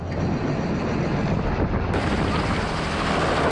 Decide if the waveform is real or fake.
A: real